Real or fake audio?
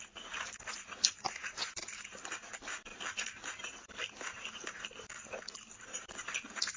real